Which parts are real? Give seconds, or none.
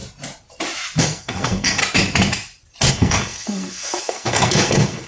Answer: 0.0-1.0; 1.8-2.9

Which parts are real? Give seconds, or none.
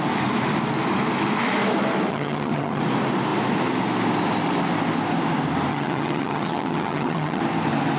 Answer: 0.0-2.1; 2.8-5.7; 7.4-8.0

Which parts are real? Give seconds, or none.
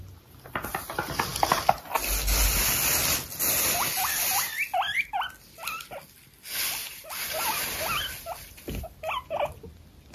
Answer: 0.0-6.8; 7.4-10.1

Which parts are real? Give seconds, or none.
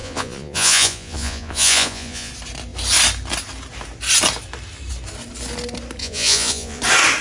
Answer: 2.3-6.0; 6.8-7.2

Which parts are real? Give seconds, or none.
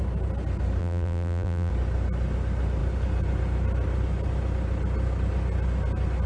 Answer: 0.0-0.8; 1.7-6.3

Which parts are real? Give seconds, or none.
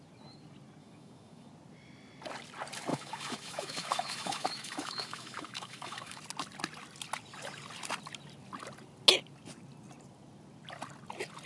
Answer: 0.0-0.8; 1.5-2.9; 6.2-11.5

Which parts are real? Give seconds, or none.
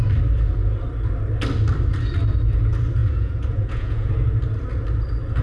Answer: 0.0-3.0; 4.1-5.4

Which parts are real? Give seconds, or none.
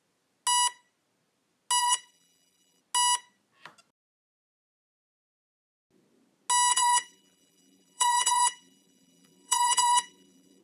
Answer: 0.0-1.8; 2.8-6.7